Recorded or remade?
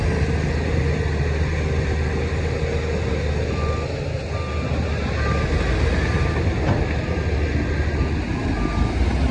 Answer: recorded